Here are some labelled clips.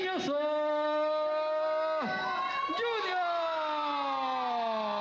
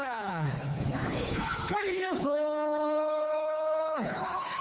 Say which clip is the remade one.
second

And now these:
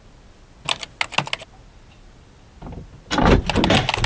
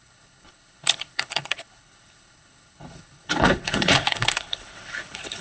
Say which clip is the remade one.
second